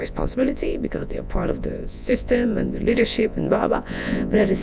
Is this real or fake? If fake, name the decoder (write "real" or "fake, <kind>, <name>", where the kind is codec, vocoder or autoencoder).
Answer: fake, vocoder, Vocos